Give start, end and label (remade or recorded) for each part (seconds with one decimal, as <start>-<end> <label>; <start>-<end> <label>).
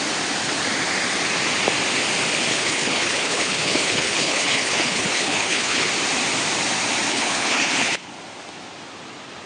0.0-2.5 recorded; 2.5-5.9 remade; 5.9-7.1 recorded; 7.1-8.1 remade; 8.1-9.5 recorded